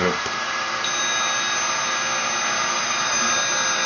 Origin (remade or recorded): recorded